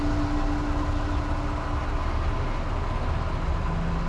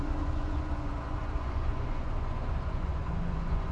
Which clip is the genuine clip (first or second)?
first